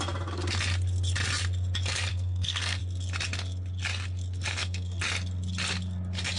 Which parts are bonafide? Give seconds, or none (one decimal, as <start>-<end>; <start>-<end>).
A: 0.0-2.1; 2.8-4.5; 5.0-6.4